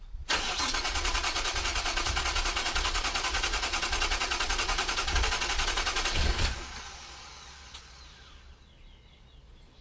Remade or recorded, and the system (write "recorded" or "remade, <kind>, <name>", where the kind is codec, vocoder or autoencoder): remade, vocoder, Vocos